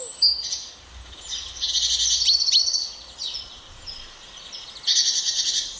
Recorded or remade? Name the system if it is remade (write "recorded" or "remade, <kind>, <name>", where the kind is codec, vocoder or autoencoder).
recorded